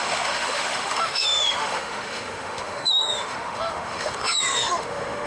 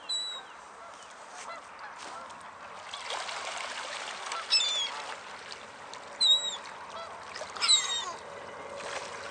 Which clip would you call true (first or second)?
second